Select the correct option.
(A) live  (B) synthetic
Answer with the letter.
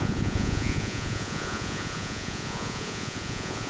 B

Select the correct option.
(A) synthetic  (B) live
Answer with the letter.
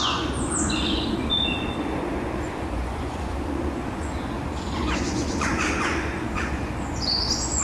A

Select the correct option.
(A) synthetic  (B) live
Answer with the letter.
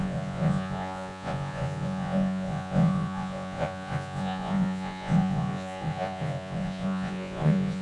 A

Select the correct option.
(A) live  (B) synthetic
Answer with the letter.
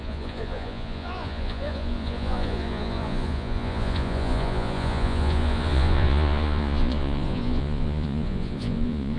B